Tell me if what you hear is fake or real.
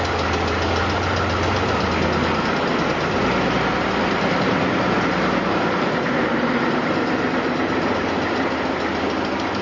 real